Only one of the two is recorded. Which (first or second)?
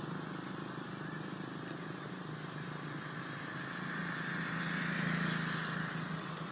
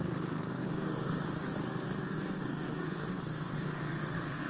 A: first